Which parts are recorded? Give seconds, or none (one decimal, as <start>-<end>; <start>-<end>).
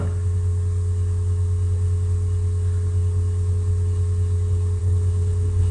0.0-4.8